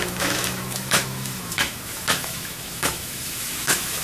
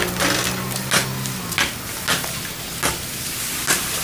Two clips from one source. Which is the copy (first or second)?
first